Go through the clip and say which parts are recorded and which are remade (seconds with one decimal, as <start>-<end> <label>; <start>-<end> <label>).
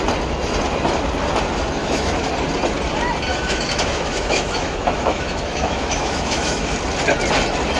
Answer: 0.0-1.8 recorded; 1.8-2.3 remade; 2.3-3.3 recorded; 3.3-6.7 remade; 6.7-7.8 recorded